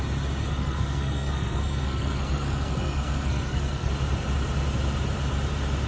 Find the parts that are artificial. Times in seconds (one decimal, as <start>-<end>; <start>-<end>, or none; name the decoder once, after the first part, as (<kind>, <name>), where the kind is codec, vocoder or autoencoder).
0.4-3.9 (codec, SNAC)